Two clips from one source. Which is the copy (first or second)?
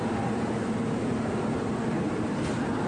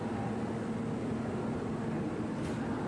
first